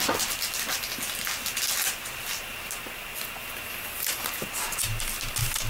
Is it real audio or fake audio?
real